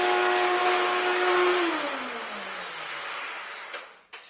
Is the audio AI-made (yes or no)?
no